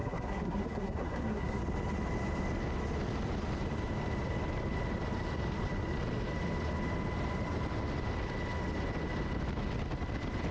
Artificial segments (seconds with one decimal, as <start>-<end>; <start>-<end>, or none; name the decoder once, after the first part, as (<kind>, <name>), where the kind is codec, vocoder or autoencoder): 0.0-1.6 (codec, SNAC)